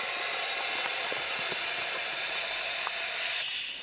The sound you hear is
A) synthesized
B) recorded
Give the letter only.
B